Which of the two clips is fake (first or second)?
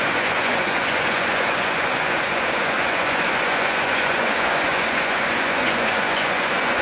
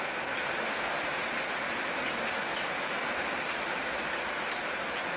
first